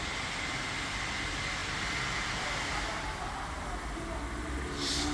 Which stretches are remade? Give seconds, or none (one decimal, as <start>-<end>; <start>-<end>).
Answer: none